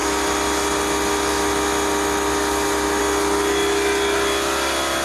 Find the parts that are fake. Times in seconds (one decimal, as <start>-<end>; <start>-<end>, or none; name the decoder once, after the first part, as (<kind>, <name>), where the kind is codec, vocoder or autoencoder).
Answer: none